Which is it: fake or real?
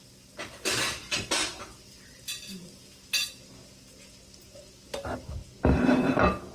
real